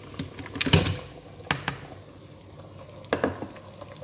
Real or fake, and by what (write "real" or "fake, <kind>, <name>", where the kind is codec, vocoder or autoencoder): real